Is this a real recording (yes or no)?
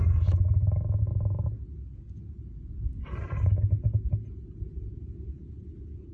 yes